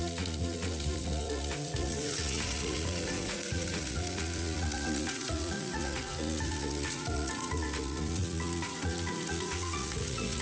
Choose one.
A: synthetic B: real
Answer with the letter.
A